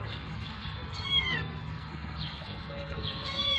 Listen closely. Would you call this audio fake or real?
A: fake